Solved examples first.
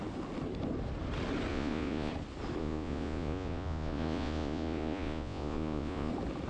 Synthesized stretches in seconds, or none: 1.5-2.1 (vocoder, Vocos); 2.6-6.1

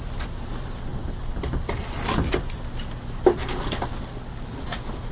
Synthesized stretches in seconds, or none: none

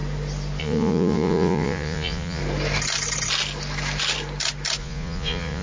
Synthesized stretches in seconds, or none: 0.6-2.4 (vocoder, Vocos); 4.8-5.6

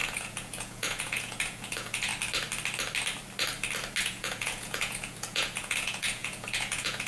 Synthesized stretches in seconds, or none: 0.0-2.1 (vocoder, Vocos); 4.0-7.1

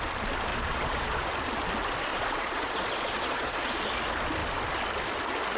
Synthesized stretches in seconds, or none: 0.5-1.4 (vocoder, Vocos); 2.1-3.8